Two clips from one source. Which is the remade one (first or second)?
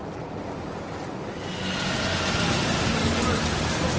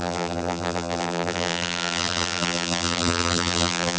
second